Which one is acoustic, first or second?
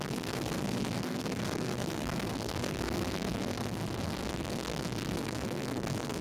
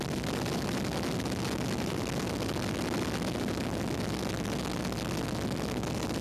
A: second